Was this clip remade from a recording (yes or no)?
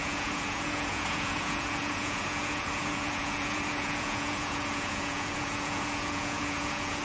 yes